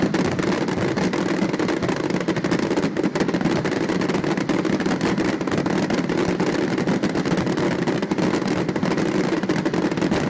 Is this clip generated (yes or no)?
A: no